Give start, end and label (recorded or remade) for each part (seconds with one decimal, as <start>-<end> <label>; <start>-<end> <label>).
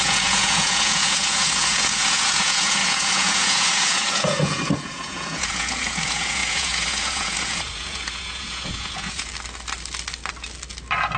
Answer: 0.0-9.3 remade; 9.3-11.2 recorded